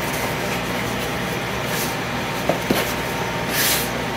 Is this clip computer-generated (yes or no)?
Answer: no